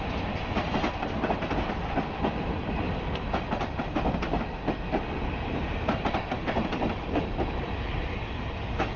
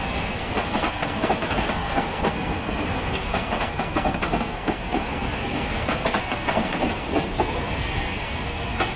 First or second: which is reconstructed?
second